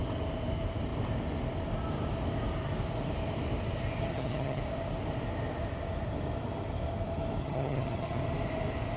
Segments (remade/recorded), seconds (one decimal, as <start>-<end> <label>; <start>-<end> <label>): 0.0-4.1 recorded; 4.1-4.6 remade; 4.6-7.4 recorded; 7.4-8.2 remade; 8.2-9.0 recorded

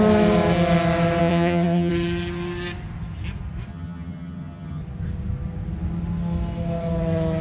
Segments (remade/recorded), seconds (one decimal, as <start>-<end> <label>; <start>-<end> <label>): 0.0-1.2 recorded; 1.2-1.9 remade; 1.9-3.7 recorded; 3.7-4.8 remade; 4.8-7.4 recorded